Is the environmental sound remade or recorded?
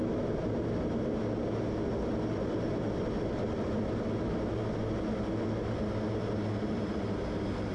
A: recorded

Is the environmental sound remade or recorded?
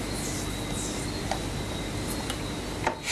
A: recorded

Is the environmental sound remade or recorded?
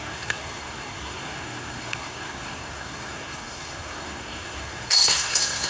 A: remade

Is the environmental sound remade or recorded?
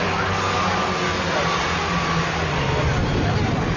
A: recorded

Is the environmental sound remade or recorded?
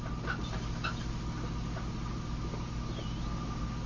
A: recorded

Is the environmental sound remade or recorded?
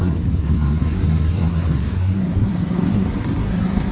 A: remade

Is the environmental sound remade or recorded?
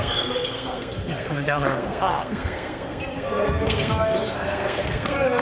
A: remade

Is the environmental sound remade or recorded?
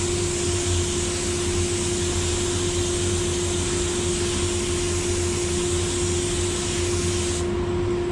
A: recorded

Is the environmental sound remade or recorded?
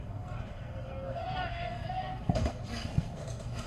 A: remade